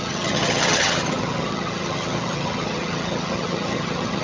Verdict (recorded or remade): remade